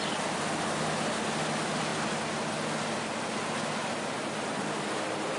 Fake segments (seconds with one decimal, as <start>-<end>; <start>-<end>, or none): none